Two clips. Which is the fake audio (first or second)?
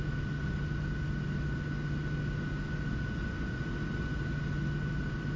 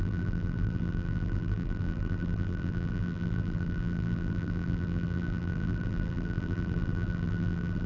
second